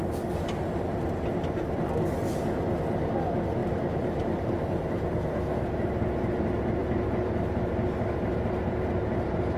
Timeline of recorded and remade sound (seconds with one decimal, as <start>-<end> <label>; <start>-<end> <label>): 0.0-3.6 recorded; 3.6-4.7 remade; 4.7-9.6 recorded